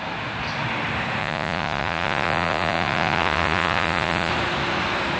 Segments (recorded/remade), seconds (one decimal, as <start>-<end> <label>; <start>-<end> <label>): 0.0-1.2 recorded; 1.2-4.3 remade; 4.3-5.2 recorded